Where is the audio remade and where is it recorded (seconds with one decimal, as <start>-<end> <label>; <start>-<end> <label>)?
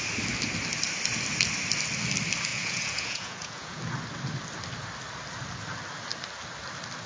0.0-2.5 recorded; 2.5-3.8 remade; 3.8-7.1 recorded